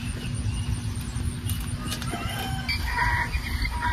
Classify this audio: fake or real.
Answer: real